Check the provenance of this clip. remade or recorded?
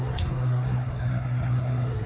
remade